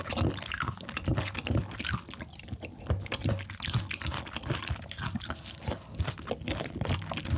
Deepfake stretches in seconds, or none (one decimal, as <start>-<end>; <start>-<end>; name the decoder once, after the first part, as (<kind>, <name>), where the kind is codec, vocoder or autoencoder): none